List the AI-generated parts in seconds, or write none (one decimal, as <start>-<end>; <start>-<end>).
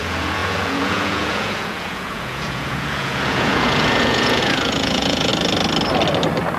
0.0-5.3